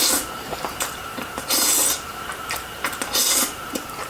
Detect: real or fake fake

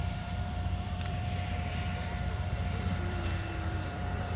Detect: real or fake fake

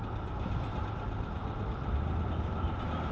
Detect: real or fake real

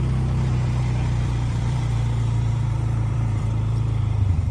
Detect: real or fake fake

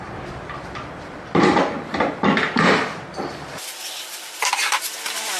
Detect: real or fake fake